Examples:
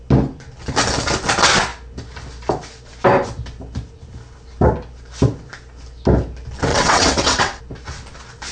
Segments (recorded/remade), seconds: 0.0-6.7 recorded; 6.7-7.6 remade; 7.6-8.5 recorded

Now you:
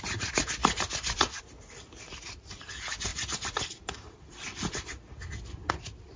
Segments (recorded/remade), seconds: 0.0-3.1 recorded; 3.1-5.0 remade; 5.0-6.2 recorded

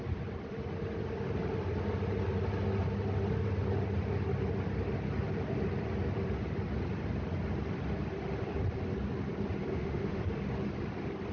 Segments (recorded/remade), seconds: 0.0-9.7 recorded; 9.7-10.2 remade; 10.2-11.3 recorded